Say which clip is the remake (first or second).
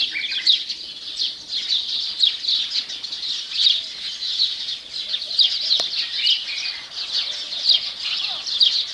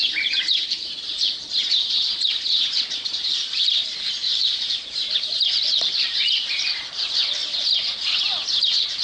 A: second